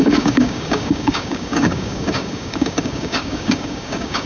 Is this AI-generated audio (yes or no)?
yes